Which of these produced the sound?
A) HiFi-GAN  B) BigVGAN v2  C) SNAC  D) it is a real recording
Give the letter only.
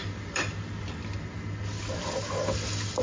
D